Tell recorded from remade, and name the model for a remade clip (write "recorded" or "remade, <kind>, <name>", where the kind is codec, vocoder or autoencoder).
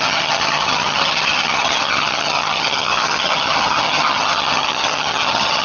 remade, vocoder, HiFi-GAN